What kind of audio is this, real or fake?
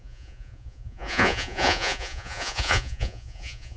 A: fake